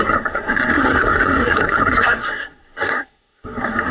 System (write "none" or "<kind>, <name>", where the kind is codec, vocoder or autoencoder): codec, SNAC